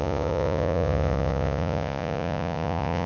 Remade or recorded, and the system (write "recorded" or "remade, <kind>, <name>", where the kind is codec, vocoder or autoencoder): remade, vocoder, Vocos